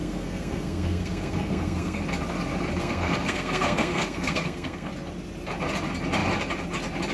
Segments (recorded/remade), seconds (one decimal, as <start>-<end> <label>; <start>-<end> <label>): 0.0-2.0 remade; 2.0-2.8 recorded; 2.8-4.9 remade; 4.9-7.1 recorded